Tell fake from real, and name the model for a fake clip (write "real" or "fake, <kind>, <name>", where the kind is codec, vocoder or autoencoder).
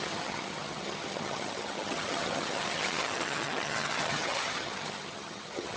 fake, vocoder, HiFi-GAN